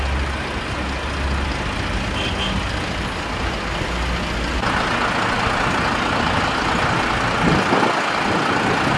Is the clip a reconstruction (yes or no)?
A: no